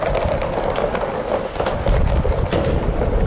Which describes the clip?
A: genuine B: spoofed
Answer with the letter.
A